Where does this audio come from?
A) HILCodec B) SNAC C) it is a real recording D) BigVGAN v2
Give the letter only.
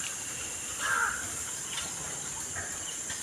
C